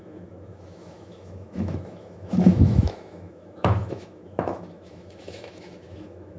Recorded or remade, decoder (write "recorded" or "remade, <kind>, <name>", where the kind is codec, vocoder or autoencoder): remade, autoencoder, DAC-VAE